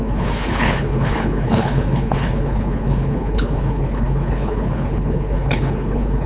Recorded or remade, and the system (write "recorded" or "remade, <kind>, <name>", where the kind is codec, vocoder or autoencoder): remade, codec, HILCodec